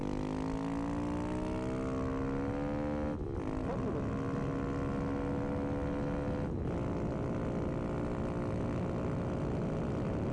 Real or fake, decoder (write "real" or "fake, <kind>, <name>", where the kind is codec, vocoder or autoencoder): real